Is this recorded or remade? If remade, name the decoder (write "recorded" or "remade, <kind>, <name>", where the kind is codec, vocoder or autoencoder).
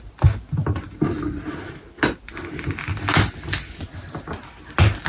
recorded